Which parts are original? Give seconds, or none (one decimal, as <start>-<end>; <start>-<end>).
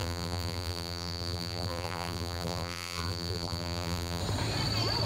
4.2-5.1